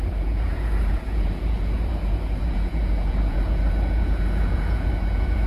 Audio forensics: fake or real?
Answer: fake